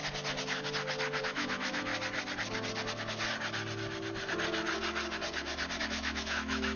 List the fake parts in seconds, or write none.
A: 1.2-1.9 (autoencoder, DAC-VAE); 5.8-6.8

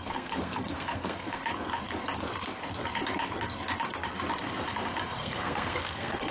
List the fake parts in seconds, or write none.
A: 0.0-1.4 (codec, SNAC); 5.2-6.3